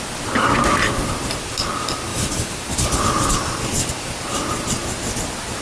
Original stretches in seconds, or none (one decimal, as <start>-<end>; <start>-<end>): 0.0-2.1; 2.7-5.6